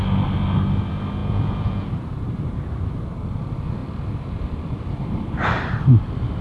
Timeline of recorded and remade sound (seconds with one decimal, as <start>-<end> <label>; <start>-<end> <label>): 0.0-1.2 recorded; 1.2-1.9 remade; 1.9-6.4 recorded